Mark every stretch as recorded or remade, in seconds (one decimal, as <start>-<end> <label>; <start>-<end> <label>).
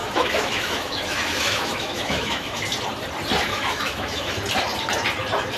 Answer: 0.0-2.6 remade; 2.6-3.5 recorded; 3.5-4.3 remade; 4.3-5.6 recorded